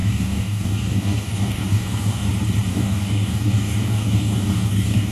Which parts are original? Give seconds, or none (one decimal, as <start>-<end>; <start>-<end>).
2.3-2.7